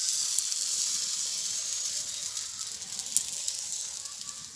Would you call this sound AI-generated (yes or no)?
no